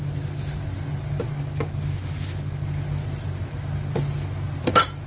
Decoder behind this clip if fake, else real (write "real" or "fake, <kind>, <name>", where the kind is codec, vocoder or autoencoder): real